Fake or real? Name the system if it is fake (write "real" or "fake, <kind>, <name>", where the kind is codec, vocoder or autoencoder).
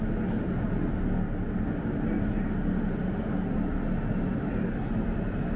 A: real